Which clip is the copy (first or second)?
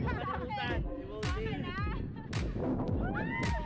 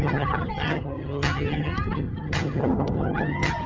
second